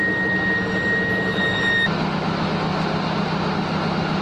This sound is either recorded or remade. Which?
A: recorded